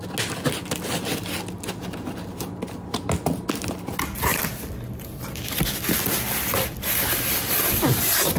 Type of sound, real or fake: real